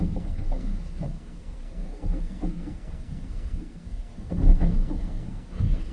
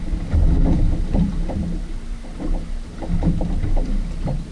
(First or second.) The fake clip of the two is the first